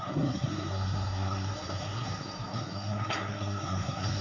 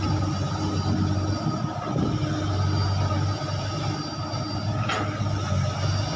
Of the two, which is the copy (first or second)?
first